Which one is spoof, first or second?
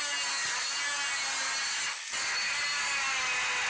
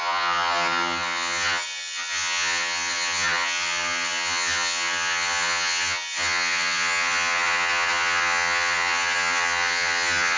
second